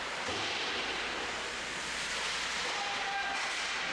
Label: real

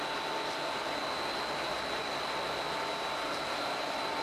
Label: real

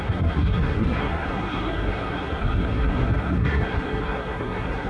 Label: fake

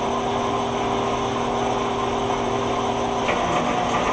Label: real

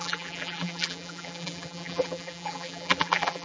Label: fake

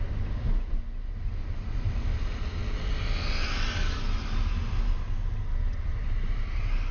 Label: real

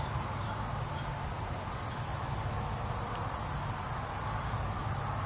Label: real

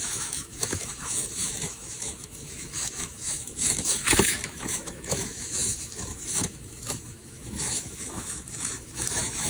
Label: fake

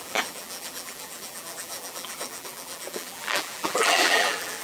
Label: fake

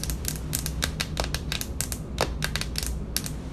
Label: real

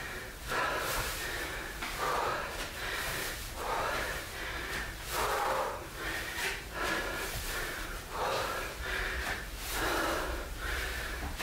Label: fake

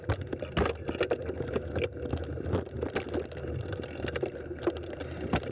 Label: real